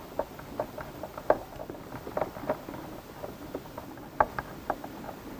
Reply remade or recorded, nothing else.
remade